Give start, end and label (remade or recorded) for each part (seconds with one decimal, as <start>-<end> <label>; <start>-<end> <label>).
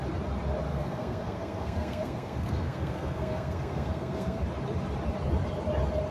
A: 0.0-0.7 recorded; 0.7-4.4 remade; 4.4-6.1 recorded